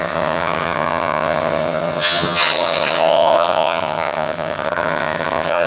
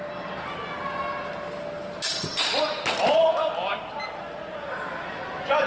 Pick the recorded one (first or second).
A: second